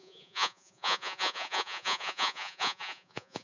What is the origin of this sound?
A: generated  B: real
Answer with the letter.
A